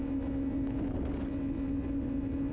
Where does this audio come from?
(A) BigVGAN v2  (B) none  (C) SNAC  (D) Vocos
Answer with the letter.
B